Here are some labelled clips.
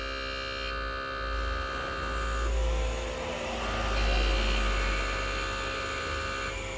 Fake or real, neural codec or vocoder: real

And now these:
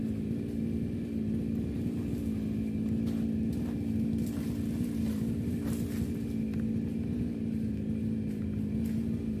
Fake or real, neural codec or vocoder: real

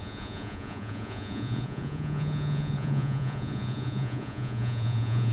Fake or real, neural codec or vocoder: fake, vocoder, Vocos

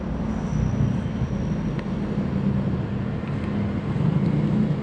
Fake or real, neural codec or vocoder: real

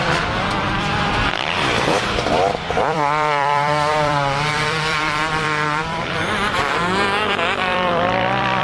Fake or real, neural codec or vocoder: fake, vocoder, BigVGAN v2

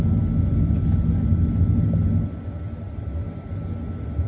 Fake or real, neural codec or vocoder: real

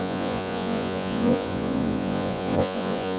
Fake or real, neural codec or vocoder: fake, vocoder, Vocos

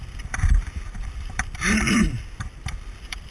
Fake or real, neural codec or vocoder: fake, vocoder, BigVGAN v2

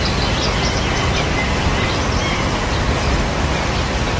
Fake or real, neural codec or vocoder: real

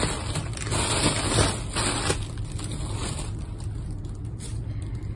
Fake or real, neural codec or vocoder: real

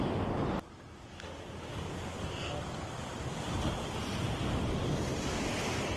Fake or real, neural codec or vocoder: real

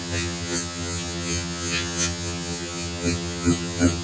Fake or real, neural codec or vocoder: fake, vocoder, HiFi-GAN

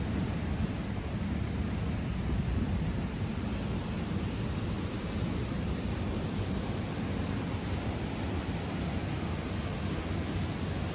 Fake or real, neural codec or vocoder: real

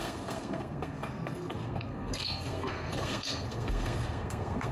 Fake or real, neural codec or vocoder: fake, codec, SNAC